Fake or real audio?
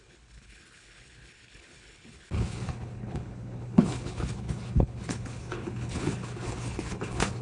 fake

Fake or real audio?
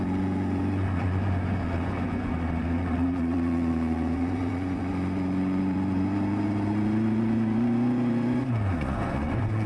fake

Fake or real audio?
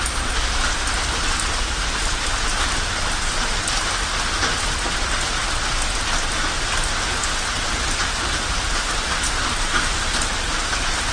real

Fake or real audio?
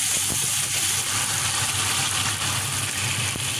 real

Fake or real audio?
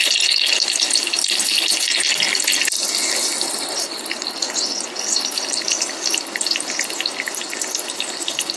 real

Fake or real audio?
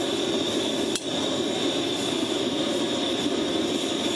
real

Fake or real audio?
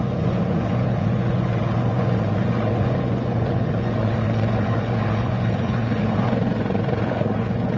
fake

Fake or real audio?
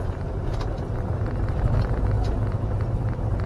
real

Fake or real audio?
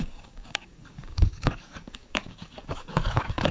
fake